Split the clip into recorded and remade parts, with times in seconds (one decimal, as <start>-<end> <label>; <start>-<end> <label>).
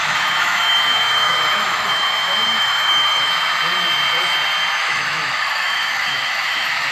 0.0-3.3 remade; 3.3-4.8 recorded; 4.8-6.9 remade